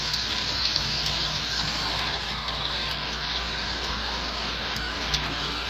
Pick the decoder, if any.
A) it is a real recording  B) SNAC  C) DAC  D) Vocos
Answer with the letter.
C